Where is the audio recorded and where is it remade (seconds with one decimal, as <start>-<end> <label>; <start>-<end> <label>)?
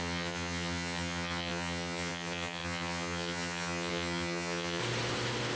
0.0-4.8 remade; 4.8-5.6 recorded